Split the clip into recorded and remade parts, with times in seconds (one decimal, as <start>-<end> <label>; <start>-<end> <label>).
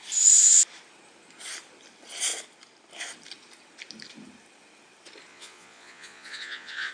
0.0-5.3 recorded; 5.3-6.9 remade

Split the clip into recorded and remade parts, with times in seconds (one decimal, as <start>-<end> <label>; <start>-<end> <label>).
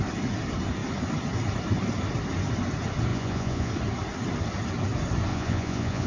0.0-3.1 recorded; 3.1-3.7 remade; 3.7-5.3 recorded; 5.3-6.1 remade